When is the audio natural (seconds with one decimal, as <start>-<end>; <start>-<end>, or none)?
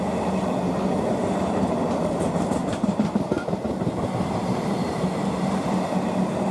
0.0-2.6; 4.8-6.5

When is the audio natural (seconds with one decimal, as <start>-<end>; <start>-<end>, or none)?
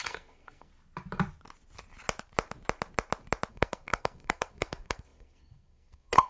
0.7-3.5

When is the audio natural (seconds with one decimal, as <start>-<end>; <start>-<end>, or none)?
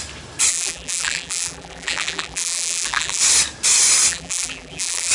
0.0-0.5; 3.2-4.1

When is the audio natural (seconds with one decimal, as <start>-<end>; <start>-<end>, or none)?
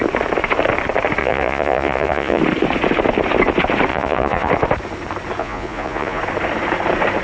0.0-1.2; 2.4-3.9; 4.5-5.4; 6.2-7.2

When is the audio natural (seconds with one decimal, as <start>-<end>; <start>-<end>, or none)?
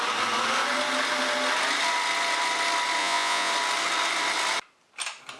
0.0-3.0; 3.5-5.4